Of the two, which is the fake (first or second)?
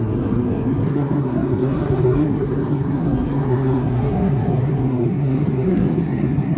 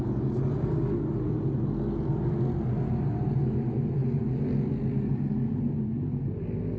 first